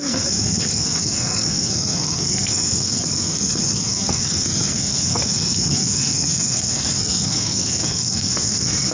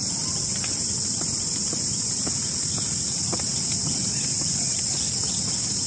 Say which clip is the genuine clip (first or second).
second